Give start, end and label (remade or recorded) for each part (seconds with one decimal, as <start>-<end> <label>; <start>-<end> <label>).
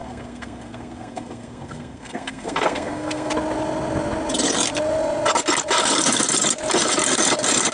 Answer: 0.0-3.3 remade; 3.3-7.7 recorded